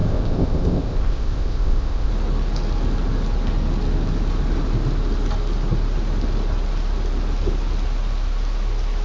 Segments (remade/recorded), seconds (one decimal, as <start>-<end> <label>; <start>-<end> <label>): 0.0-2.1 remade; 2.1-9.0 recorded